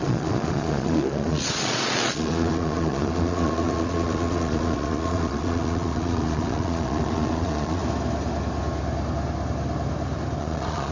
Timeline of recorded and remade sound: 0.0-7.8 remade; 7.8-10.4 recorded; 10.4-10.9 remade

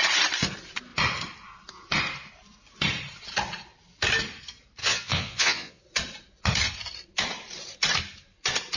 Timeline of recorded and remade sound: 0.0-4.8 recorded; 4.8-5.8 remade; 5.8-8.8 recorded

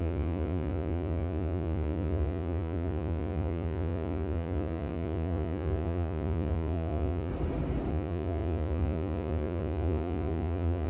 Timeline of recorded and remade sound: 0.0-7.3 remade; 7.3-7.9 recorded; 7.9-10.9 remade

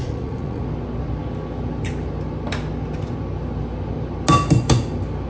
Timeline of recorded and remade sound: 0.0-0.6 remade; 0.6-5.3 recorded